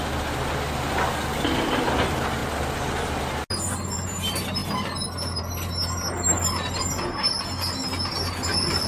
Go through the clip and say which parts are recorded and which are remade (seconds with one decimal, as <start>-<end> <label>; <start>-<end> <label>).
0.0-8.9 recorded